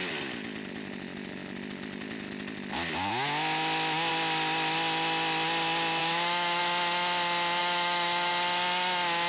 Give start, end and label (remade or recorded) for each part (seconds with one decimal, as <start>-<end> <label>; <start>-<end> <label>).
0.0-6.0 recorded; 6.0-6.6 remade; 6.6-7.6 recorded; 7.6-8.3 remade; 8.3-9.3 recorded